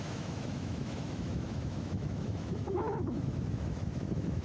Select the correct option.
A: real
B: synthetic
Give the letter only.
B